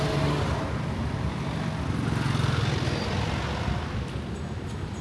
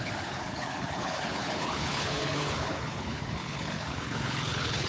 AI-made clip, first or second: second